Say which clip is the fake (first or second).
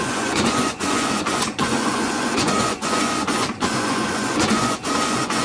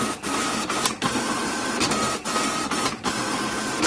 first